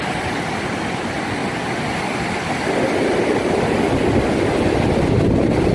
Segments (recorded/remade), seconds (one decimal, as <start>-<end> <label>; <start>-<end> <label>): 0.0-5.7 recorded